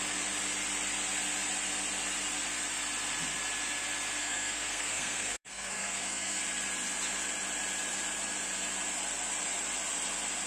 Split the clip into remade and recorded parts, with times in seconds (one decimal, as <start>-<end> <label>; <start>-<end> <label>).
0.0-4.2 recorded; 4.2-6.4 remade; 6.4-10.5 recorded